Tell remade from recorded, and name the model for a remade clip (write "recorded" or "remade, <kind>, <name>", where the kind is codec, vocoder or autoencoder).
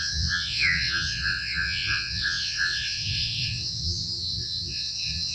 remade, vocoder, WaveNeXt